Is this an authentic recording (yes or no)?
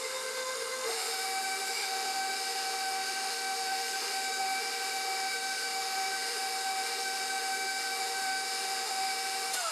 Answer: no